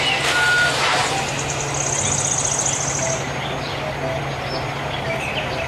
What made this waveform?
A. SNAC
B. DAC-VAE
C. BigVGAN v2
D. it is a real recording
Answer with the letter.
D